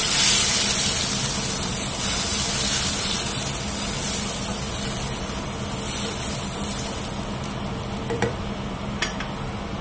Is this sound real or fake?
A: real